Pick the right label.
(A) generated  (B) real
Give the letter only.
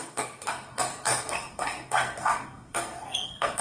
A